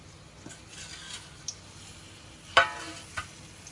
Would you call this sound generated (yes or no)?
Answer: no